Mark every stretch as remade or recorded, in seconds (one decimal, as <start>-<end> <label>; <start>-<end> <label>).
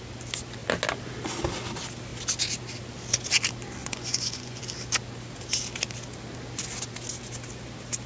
0.0-3.8 recorded; 3.8-4.6 remade; 4.6-8.1 recorded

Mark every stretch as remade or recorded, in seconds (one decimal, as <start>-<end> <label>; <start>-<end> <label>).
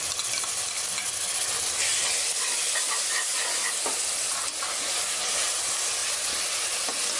0.0-7.2 recorded